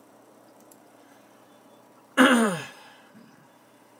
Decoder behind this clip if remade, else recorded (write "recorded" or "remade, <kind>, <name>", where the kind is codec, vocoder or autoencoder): remade, vocoder, BigVGAN v2